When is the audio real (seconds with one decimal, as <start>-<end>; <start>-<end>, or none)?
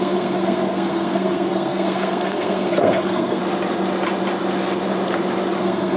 3.4-5.6